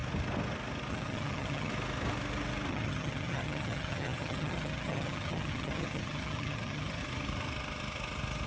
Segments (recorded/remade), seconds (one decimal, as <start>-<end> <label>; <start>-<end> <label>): 0.0-0.9 recorded; 0.9-1.7 remade; 1.7-2.7 recorded; 2.7-7.0 remade; 7.0-8.5 recorded